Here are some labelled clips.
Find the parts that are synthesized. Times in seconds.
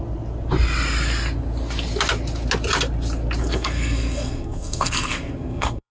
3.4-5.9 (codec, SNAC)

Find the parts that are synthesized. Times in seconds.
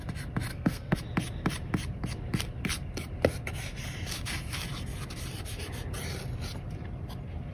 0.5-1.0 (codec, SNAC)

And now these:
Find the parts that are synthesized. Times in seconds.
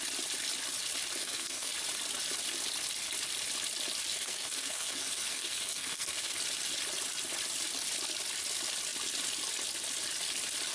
1.2-1.7 (codec, SNAC); 4.1-6.4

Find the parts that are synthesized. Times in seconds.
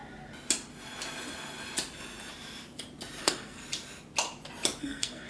3.2-3.6 (codec, SNAC); 4.8-5.3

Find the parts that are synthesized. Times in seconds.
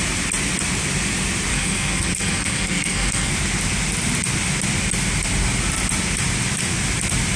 1.5-3.3 (codec, SNAC)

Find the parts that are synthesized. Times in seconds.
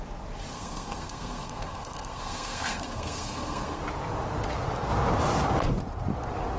0.5-3.8 (codec, SNAC)